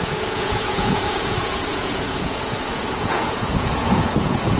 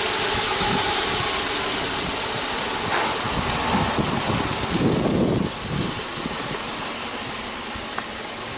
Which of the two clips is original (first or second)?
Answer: second